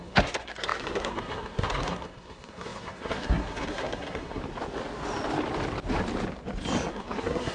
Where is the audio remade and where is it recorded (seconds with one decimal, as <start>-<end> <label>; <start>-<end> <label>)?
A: 0.0-4.4 remade; 4.4-6.9 recorded; 6.9-7.5 remade